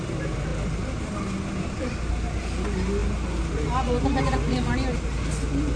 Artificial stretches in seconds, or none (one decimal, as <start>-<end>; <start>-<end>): none